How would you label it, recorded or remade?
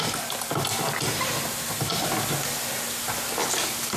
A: recorded